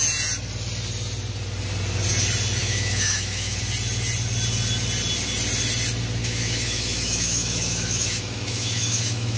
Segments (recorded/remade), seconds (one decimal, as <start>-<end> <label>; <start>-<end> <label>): 0.0-2.6 recorded; 2.6-3.6 remade; 3.6-6.2 recorded; 6.2-9.4 remade